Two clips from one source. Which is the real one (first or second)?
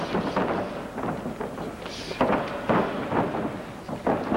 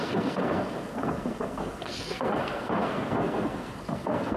first